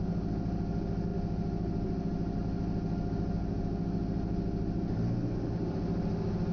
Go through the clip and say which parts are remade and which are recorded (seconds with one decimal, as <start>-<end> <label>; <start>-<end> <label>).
0.0-6.5 recorded